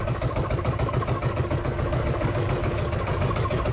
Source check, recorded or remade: remade